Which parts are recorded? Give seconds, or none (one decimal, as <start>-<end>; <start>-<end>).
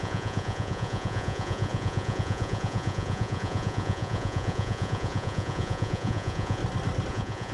6.6-7.1